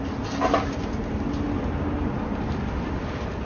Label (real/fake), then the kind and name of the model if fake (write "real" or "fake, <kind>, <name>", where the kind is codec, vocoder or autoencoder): real